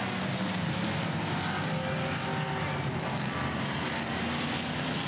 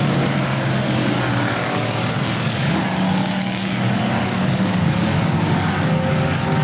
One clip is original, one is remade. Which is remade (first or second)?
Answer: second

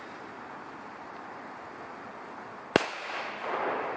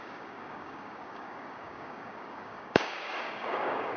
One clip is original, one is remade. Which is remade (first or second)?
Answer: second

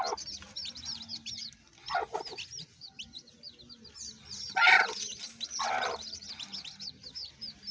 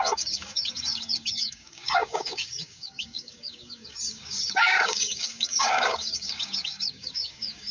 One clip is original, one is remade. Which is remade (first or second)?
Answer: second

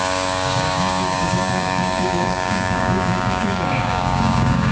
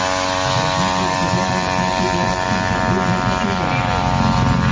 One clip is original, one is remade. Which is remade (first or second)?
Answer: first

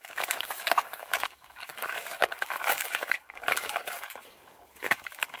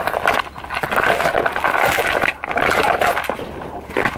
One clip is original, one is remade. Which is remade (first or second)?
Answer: first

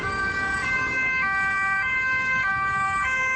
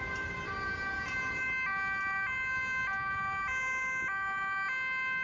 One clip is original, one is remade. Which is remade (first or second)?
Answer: first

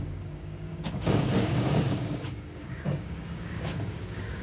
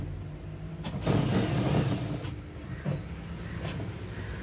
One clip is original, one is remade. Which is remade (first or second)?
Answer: first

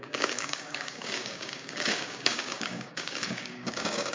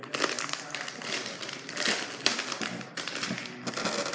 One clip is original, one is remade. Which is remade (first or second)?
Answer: first